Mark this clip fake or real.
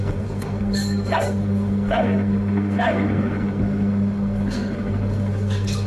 fake